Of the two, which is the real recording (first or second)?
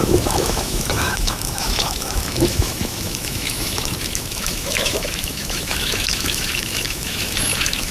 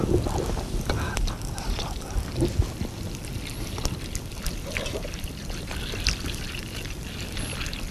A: second